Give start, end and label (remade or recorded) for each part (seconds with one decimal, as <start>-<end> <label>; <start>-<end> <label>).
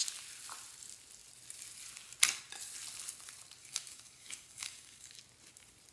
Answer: 0.0-3.6 recorded; 3.6-5.2 remade; 5.2-5.9 recorded